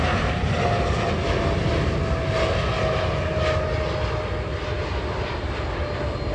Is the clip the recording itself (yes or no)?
yes